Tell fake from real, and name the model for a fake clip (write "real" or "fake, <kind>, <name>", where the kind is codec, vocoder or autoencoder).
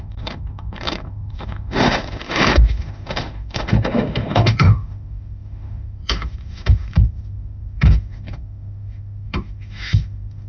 fake, autoencoder, DAC-VAE